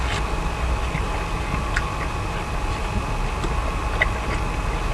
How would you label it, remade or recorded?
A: recorded